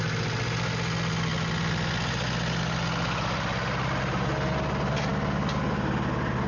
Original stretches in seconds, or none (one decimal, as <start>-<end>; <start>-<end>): 0.0-6.5